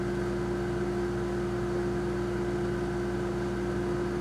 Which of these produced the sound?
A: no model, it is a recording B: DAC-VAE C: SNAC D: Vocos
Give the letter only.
A